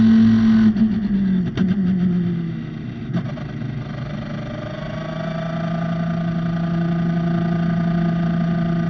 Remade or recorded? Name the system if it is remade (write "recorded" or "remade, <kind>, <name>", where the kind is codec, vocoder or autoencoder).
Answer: recorded